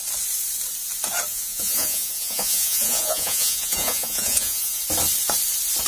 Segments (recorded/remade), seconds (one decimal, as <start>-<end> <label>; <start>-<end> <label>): 0.0-1.3 recorded; 1.3-4.8 remade; 4.8-5.9 recorded